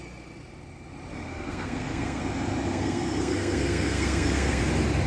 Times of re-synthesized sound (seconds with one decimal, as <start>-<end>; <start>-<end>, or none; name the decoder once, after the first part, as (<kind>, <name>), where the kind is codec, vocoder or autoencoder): 1.1-2.2 (codec, SNAC); 2.7-4.6